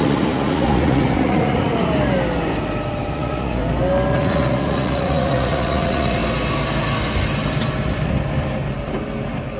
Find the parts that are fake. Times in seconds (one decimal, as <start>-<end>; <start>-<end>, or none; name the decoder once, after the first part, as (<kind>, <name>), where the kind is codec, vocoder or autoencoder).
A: 0.0-1.7 (vocoder, Vocos); 3.1-3.6; 4.1-6.2